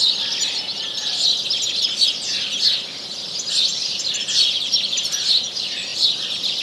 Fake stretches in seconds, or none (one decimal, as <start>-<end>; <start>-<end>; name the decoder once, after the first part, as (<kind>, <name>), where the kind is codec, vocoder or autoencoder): 3.7-5.0 (vocoder, BigVGAN v2); 5.9-6.6